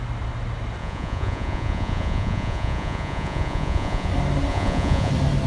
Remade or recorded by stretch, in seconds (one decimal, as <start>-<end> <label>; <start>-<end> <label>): 0.0-0.8 recorded; 0.8-4.1 remade; 4.1-4.5 recorded; 4.5-5.1 remade; 5.1-5.5 recorded

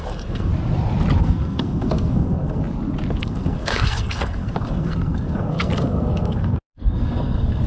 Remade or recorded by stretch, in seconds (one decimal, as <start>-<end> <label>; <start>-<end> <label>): 0.0-0.5 remade; 0.5-1.2 recorded; 1.2-2.6 remade; 2.6-3.2 recorded; 3.2-7.7 remade

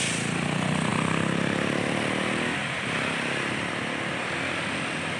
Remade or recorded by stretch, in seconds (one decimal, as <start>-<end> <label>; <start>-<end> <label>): 0.0-5.2 recorded